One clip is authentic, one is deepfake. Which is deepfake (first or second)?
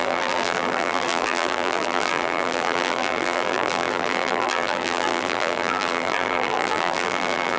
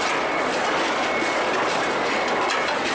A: first